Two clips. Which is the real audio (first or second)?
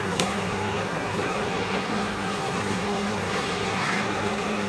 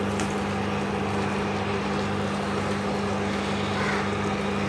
second